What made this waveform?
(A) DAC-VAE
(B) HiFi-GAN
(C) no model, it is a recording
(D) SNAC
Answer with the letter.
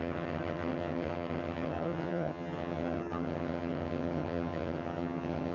B